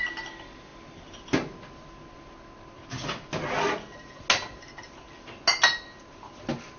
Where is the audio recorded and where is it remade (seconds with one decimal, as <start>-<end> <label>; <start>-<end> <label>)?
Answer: 0.0-6.8 recorded